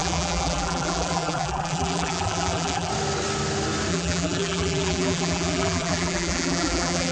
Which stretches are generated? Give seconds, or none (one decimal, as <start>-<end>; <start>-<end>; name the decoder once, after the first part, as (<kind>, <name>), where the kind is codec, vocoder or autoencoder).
0.0-2.9 (vocoder, BigVGAN v2); 3.9-7.1

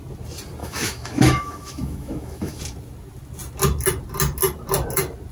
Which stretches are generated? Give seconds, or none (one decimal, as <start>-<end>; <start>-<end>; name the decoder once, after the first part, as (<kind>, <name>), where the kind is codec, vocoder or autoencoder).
0.6-2.6 (autoencoder, DAC-VAE)

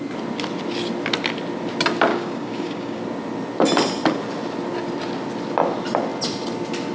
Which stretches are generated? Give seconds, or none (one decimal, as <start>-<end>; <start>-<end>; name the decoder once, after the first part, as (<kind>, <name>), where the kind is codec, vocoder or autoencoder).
2.1-3.0 (codec, DAC)

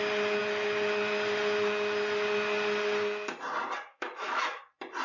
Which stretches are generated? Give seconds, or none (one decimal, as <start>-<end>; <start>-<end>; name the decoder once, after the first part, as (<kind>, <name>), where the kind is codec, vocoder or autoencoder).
3.9-4.6 (autoencoder, DAC-VAE)

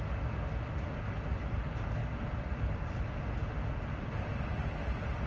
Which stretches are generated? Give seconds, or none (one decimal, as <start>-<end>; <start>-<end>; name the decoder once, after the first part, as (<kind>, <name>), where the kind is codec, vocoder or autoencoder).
none

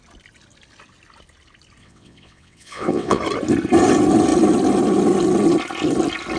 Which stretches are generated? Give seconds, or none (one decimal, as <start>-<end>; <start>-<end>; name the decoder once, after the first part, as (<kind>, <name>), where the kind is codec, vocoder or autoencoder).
1.8-3.2 (vocoder, WaveNeXt)

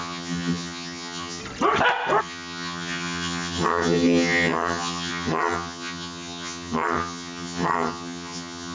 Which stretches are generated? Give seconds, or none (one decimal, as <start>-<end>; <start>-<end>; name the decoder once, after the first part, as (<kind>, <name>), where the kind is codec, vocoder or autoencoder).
0.0-1.4 (vocoder, HiFi-GAN); 2.2-8.7